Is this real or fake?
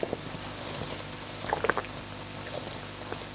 real